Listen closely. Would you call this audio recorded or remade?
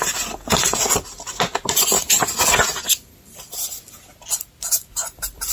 recorded